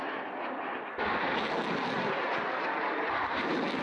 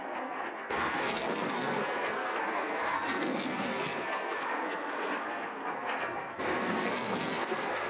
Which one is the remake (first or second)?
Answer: second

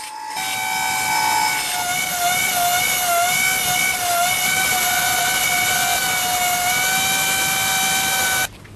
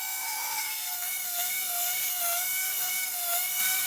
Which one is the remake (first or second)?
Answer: second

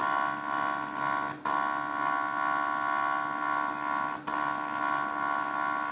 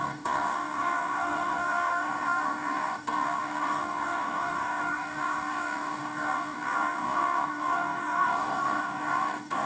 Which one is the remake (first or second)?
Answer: second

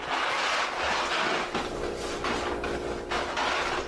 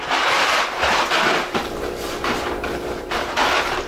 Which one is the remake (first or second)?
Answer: second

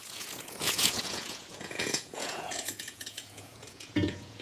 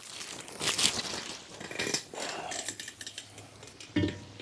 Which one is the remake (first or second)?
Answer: first